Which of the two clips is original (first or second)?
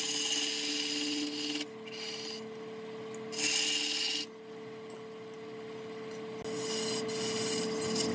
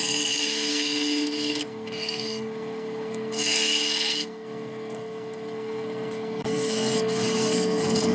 first